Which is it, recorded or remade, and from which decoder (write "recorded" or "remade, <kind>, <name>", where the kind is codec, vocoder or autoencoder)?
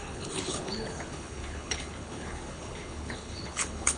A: remade, codec, HILCodec